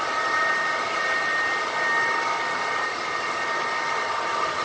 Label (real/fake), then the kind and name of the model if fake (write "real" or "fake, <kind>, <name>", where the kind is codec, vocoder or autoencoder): real